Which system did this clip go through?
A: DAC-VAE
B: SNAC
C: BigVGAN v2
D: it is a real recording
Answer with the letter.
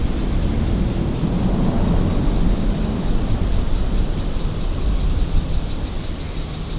D